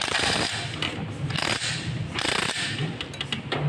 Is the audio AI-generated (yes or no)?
no